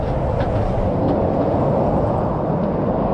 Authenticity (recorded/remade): recorded